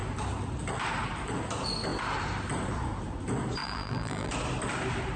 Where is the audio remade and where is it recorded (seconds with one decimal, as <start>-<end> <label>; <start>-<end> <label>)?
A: 0.0-3.6 recorded; 3.6-4.3 remade; 4.3-5.2 recorded